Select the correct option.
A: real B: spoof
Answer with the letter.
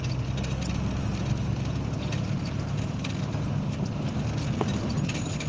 A